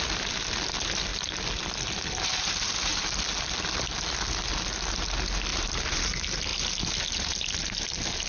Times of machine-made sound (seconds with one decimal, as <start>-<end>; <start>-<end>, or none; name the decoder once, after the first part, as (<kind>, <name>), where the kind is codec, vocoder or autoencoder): 5.5-6.1 (vocoder, BigVGAN v2)